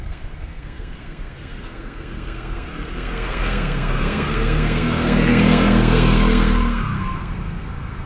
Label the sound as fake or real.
fake